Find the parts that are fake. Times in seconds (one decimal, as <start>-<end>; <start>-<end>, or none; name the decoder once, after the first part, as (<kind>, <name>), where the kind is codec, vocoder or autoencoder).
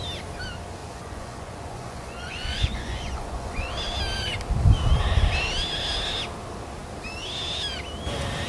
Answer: 0.8-3.7 (vocoder, Vocos)